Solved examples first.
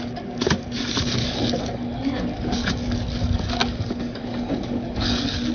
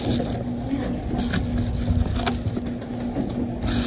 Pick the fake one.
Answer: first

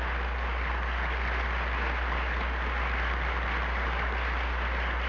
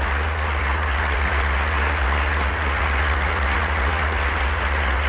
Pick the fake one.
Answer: second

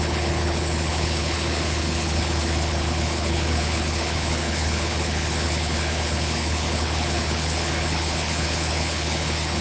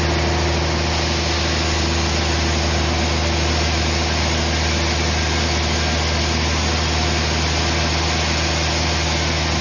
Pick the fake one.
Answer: first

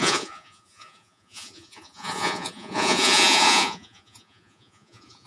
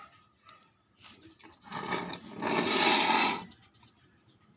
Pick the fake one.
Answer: first